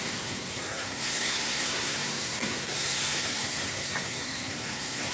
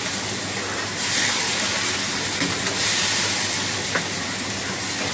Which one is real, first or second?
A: second